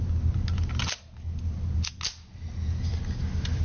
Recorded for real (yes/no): yes